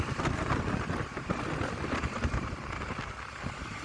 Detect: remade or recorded recorded